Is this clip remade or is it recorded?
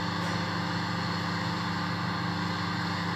recorded